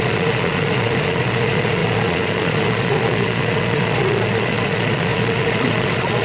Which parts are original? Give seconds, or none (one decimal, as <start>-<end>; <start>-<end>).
none